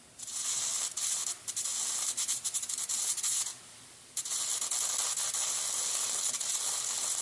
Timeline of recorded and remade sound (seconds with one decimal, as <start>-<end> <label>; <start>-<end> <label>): 0.0-7.2 recorded